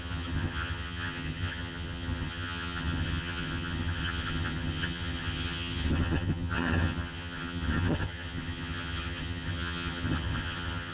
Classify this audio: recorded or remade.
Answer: remade